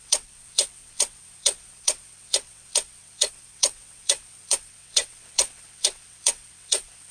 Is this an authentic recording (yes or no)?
no